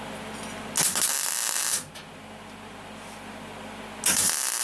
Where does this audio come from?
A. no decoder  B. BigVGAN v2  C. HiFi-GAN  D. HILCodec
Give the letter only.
A